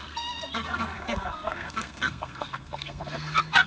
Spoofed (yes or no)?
yes